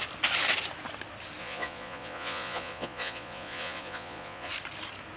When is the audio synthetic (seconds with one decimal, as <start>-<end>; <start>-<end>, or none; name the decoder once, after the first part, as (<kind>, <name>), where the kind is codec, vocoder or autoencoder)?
1.4-4.5 (vocoder, Vocos)